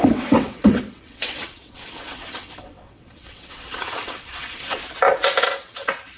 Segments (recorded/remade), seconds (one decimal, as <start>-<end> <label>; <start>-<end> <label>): 0.0-4.8 remade; 4.8-5.4 recorded; 5.4-6.2 remade